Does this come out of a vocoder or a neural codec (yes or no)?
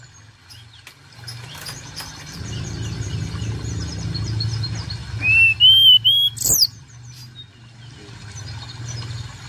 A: no